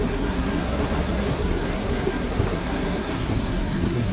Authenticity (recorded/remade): remade